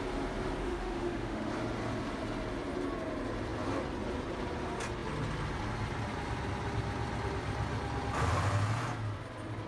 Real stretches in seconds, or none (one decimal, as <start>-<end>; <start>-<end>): 0.0-0.6; 1.5-9.7